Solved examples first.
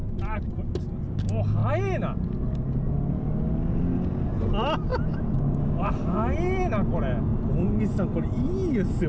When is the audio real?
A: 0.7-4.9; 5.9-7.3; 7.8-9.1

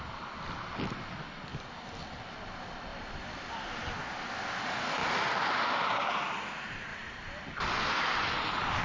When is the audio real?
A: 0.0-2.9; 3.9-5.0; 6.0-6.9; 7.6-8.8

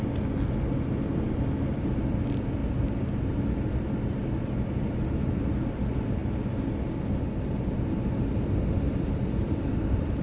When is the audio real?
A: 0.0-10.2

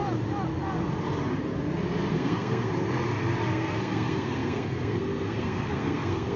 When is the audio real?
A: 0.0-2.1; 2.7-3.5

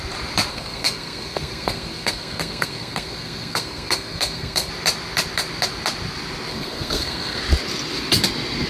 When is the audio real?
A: 0.0-0.5; 4.7-6.5; 7.4-8.7